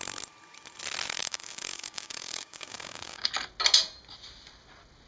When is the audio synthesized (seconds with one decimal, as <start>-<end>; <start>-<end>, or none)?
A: 1.2-3.3